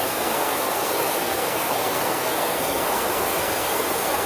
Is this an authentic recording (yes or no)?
no